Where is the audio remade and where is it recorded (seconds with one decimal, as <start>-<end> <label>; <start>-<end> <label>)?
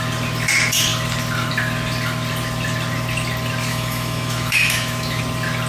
0.0-3.7 recorded; 3.7-5.2 remade; 5.2-5.7 recorded